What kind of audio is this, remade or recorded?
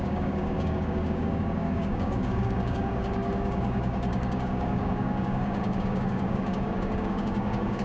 remade